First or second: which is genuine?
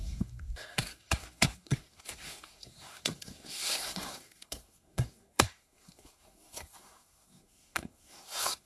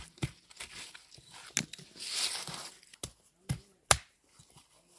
second